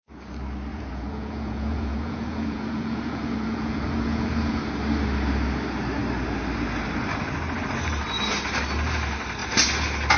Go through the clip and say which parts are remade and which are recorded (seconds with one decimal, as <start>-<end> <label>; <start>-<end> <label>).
0.0-0.7 recorded; 0.7-4.6 remade; 4.6-10.2 recorded